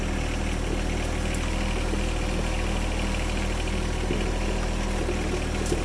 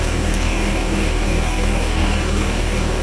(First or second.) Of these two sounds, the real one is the first